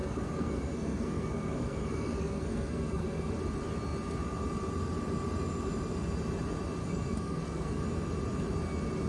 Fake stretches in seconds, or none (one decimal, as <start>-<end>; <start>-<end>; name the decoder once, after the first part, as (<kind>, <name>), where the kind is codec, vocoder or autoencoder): 0.0-3.3 (codec, SNAC); 6.8-7.8